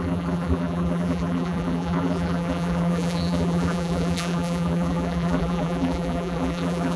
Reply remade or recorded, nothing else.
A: remade